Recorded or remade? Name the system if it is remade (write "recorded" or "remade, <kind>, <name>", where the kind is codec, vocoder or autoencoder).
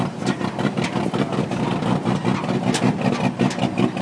recorded